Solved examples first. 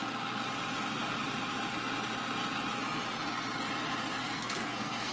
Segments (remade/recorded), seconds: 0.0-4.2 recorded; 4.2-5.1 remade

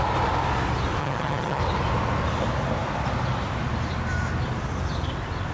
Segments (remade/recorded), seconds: 0.0-1.0 recorded; 1.0-1.6 remade; 1.6-5.5 recorded

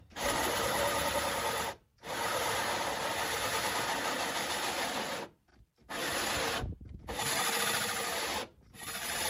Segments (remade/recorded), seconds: 0.0-5.5 remade; 5.5-8.2 recorded; 8.2-9.3 remade

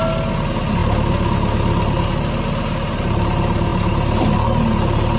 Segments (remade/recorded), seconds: 0.0-5.2 recorded

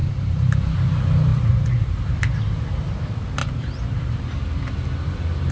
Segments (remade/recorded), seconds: 0.0-0.6 remade; 0.6-1.3 recorded; 1.3-2.2 remade; 2.2-3.4 recorded; 3.4-4.2 remade; 4.2-5.5 recorded